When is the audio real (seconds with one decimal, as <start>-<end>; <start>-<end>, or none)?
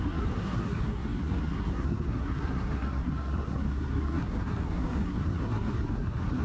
none